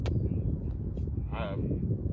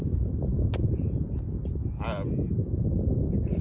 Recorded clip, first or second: first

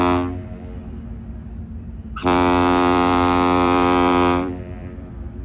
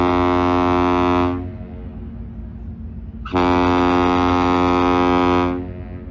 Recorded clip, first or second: second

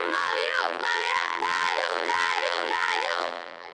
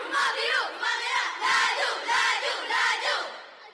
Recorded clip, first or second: second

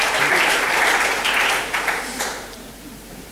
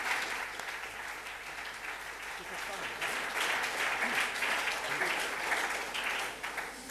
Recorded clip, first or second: second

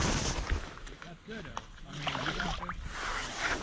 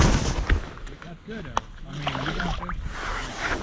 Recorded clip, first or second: second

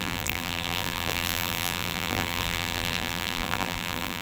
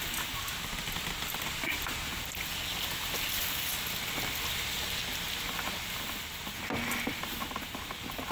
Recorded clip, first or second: second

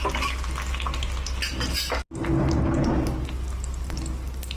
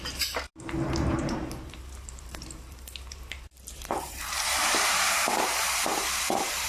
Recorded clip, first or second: first